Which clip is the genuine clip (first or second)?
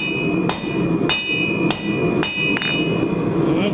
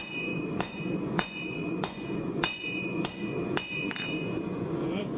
first